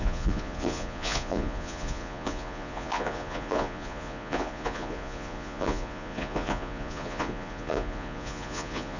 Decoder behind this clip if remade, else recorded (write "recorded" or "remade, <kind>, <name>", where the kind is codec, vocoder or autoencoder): remade, vocoder, Vocos